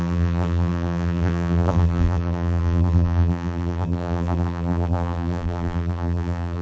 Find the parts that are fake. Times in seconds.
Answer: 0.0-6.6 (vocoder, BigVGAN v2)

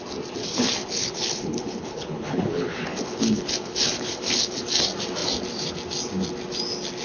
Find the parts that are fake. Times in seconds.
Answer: 0.4-4.6 (codec, HILCodec)

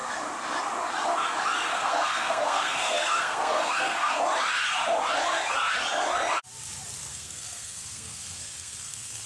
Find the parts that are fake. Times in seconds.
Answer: 1.7-4.2 (codec, SNAC); 7.1-9.3